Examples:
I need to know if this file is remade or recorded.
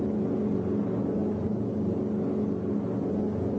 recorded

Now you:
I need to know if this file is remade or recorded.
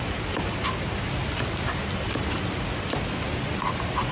recorded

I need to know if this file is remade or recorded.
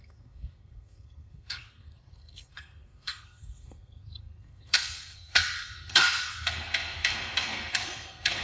remade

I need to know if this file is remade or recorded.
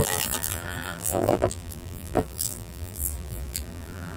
remade